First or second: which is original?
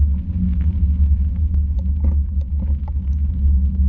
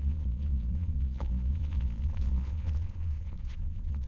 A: first